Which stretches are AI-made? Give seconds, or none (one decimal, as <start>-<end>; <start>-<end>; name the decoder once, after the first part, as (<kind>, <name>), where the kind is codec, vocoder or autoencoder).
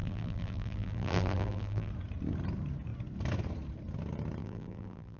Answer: 0.0-1.9 (vocoder, BigVGAN v2); 4.4-5.2